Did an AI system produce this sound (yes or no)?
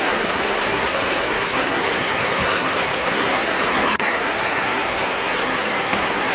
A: yes